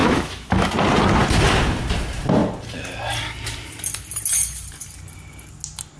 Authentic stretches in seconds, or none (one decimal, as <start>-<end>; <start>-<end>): 0.7-6.0